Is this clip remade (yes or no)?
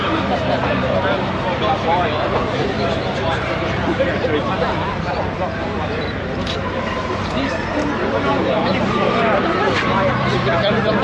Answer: yes